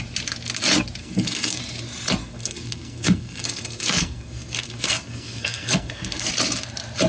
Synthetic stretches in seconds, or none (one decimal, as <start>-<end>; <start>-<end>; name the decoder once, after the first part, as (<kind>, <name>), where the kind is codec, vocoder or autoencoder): 1.0-1.6 (codec, SNAC); 2.2-6.3